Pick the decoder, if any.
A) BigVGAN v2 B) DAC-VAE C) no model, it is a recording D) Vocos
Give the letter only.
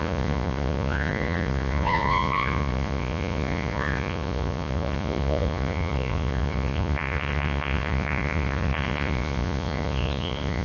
D